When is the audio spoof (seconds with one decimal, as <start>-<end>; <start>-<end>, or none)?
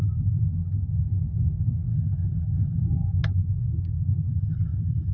1.9-2.8; 4.3-5.1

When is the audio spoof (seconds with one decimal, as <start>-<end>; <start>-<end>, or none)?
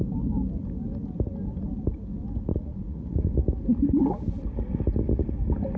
2.5-3.3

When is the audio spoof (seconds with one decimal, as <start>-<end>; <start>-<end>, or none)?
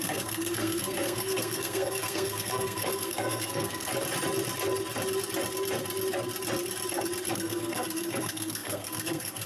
0.0-3.9; 7.3-9.5